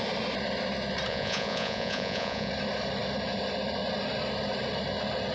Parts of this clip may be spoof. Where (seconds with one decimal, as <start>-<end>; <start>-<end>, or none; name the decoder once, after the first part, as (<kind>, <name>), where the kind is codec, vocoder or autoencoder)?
1.1-2.5 (vocoder, Vocos)